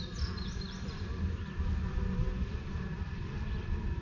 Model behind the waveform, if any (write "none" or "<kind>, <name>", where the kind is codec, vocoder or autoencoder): none